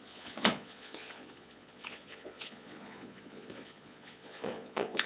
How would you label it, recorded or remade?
remade